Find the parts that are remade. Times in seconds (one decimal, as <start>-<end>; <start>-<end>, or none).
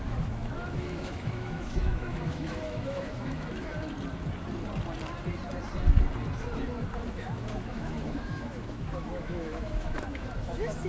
0.0-3.7; 7.1-10.9